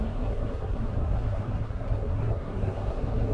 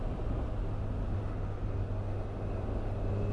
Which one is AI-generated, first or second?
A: first